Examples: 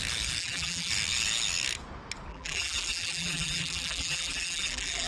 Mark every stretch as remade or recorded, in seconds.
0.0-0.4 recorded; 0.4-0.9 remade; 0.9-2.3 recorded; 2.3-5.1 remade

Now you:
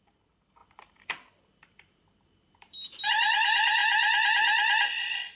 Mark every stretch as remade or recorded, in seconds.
0.0-3.8 remade; 3.8-5.4 recorded

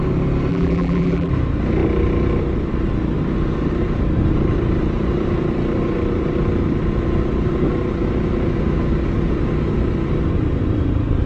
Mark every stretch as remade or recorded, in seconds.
0.0-0.5 recorded; 0.5-1.3 remade; 1.3-11.3 recorded

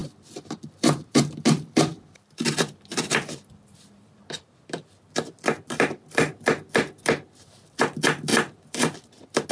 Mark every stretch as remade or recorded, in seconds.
0.0-1.2 remade; 1.2-1.9 recorded; 1.9-6.3 remade; 6.3-8.3 recorded; 8.3-9.5 remade

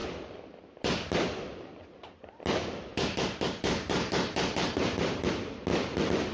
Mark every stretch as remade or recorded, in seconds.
0.0-2.9 recorded; 2.9-5.3 remade; 5.3-6.3 recorded

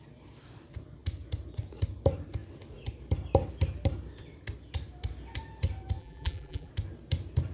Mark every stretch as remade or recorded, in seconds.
0.0-6.0 recorded; 6.0-6.7 remade; 6.7-7.5 recorded

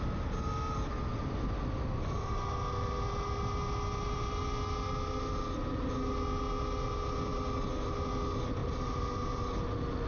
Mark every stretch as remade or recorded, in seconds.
0.0-8.6 recorded; 8.6-9.4 remade; 9.4-10.1 recorded

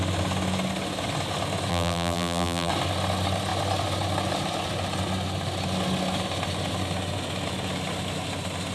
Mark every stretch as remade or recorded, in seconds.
0.0-1.7 recorded; 1.7-2.7 remade; 2.7-8.7 recorded